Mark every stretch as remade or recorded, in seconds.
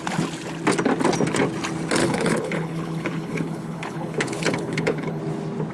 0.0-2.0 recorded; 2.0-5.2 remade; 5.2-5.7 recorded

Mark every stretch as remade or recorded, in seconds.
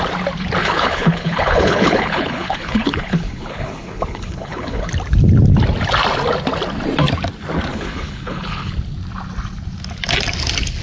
0.0-0.6 recorded; 0.6-4.9 remade; 4.9-7.7 recorded; 7.7-8.7 remade; 8.7-10.8 recorded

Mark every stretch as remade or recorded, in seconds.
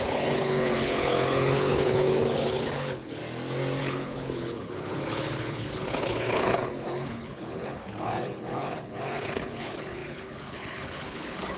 0.0-3.2 remade; 3.2-3.8 recorded; 3.8-11.6 remade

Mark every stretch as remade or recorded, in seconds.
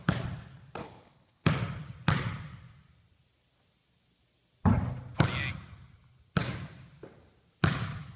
0.0-0.8 recorded; 0.8-1.5 remade; 1.5-8.2 recorded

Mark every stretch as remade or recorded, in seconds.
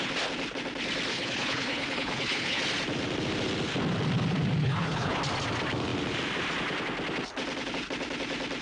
0.0-1.1 recorded; 1.1-2.6 remade; 2.6-4.6 recorded; 4.6-5.2 remade; 5.2-8.6 recorded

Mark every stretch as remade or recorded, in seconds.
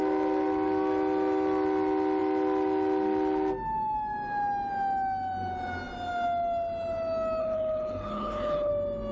0.0-7.4 recorded; 7.4-8.7 remade; 8.7-9.1 recorded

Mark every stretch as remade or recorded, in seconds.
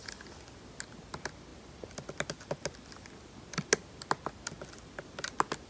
0.0-5.7 recorded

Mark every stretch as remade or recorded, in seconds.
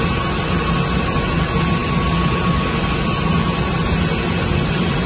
0.0-5.1 recorded